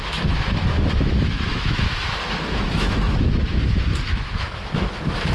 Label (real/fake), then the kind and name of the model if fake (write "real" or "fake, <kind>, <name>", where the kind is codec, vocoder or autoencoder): fake, autoencoder, DAC-VAE